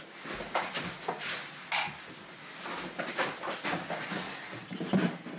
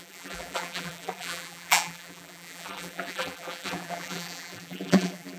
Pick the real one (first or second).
first